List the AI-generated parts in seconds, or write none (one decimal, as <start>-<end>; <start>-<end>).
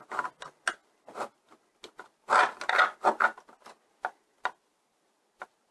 none